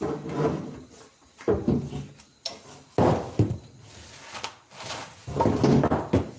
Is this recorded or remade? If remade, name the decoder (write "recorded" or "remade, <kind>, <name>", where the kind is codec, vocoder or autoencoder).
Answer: recorded